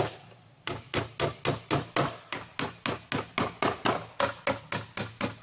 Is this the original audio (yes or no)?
yes